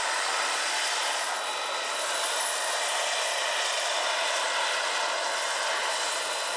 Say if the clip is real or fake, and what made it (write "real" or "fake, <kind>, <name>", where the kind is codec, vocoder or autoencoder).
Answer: fake, vocoder, BigVGAN v2